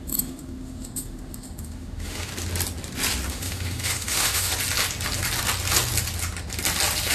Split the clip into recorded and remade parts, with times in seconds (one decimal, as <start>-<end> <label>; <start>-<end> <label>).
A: 0.0-2.3 remade; 2.3-3.3 recorded; 3.3-4.5 remade; 4.5-7.1 recorded